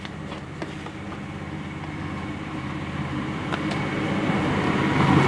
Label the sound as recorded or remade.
recorded